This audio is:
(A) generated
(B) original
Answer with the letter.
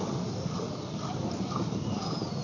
B